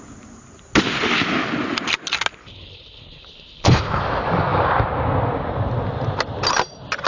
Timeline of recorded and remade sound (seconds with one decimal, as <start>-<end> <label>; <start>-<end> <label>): 0.0-2.4 recorded; 2.4-4.0 remade; 4.0-7.1 recorded